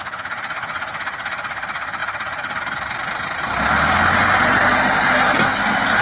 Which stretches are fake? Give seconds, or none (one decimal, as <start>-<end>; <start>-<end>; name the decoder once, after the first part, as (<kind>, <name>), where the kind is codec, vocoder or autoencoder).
none